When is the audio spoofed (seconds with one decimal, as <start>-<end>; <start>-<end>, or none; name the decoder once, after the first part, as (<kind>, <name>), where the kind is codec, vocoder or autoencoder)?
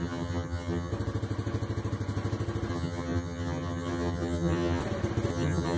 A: 0.0-0.9 (vocoder, HiFi-GAN); 2.7-4.8; 5.3-5.8